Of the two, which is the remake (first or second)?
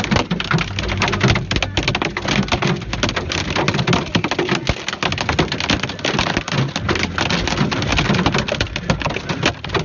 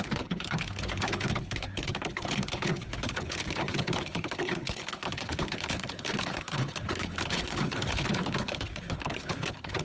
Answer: second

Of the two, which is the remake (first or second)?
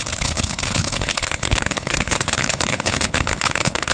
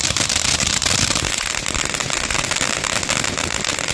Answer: first